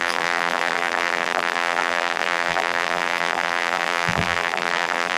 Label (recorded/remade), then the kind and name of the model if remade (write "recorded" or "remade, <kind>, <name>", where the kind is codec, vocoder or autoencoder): remade, vocoder, BigVGAN v2